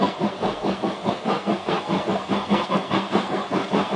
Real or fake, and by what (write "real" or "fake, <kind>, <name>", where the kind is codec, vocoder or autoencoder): fake, codec, SNAC